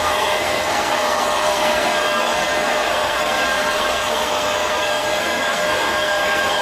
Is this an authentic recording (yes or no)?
no